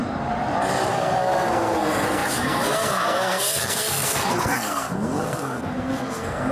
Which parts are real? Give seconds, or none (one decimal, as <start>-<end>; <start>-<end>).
0.0-0.9